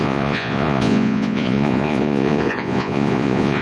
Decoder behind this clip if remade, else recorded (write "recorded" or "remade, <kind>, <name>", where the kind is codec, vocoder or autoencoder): remade, vocoder, Vocos